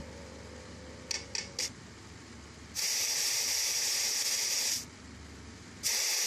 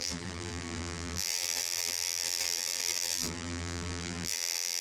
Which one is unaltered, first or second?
first